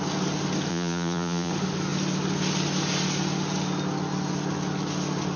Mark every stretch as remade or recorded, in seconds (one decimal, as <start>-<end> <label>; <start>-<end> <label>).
0.0-0.7 recorded; 0.7-1.5 remade; 1.5-5.4 recorded

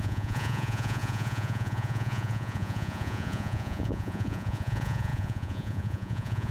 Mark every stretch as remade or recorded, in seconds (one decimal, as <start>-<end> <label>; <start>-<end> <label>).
0.0-6.5 remade

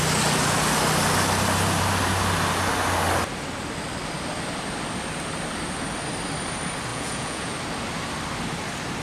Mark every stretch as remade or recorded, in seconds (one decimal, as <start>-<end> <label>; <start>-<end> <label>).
0.0-6.9 recorded; 6.9-7.5 remade; 7.5-9.0 recorded